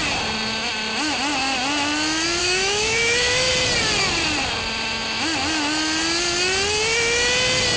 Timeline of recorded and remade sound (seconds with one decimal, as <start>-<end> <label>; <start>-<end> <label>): 0.0-2.4 recorded; 2.4-3.5 remade; 3.5-7.8 recorded